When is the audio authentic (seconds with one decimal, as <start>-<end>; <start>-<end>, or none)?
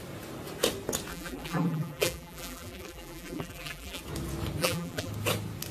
0.0-1.1; 4.0-4.6; 5.1-5.7